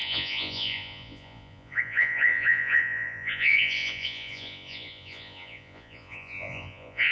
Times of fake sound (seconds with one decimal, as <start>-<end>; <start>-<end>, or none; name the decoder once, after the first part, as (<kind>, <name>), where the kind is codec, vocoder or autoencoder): 0.0-7.1 (vocoder, Vocos)